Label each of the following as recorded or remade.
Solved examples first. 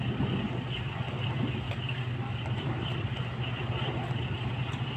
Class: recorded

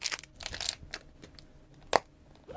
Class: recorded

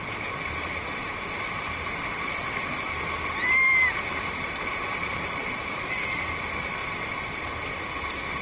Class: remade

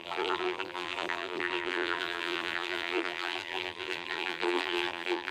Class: remade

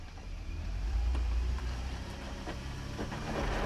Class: remade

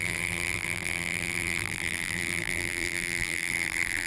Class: remade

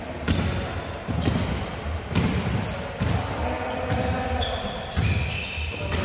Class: recorded